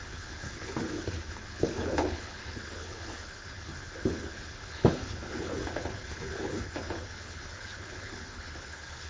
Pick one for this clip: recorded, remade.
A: remade